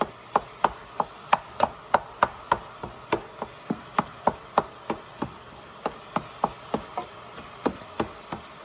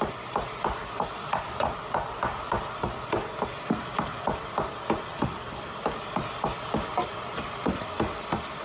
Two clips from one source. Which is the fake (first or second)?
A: second